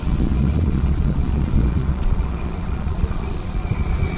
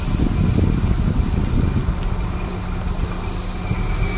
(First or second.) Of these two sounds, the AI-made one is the first